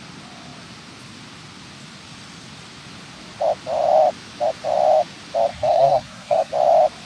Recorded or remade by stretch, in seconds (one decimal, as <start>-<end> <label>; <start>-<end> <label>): 0.0-5.5 recorded; 5.5-6.5 remade; 6.5-7.1 recorded